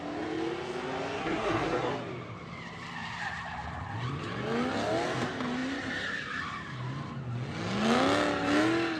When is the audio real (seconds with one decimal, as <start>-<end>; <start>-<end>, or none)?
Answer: 0.0-1.2; 1.9-9.0